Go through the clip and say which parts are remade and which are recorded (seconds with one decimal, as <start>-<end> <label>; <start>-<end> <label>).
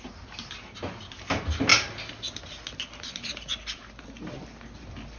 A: 0.0-5.2 recorded